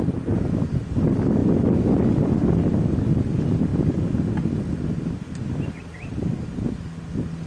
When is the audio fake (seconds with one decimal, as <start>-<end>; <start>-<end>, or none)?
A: none